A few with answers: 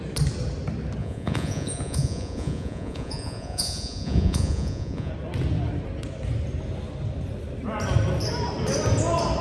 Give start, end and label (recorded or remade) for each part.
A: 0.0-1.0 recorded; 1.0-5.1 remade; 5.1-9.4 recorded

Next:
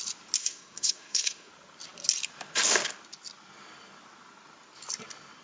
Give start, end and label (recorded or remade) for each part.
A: 0.0-0.4 recorded; 0.4-1.5 remade; 1.5-5.4 recorded

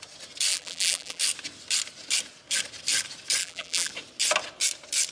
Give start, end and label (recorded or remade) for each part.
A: 0.0-0.5 recorded; 0.5-1.2 remade; 1.2-3.4 recorded; 3.4-3.9 remade; 3.9-5.1 recorded